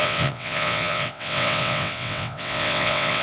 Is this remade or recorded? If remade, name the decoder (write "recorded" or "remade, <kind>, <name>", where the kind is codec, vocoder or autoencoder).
remade, vocoder, WaveNeXt